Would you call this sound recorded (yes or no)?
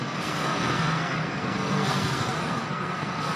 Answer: no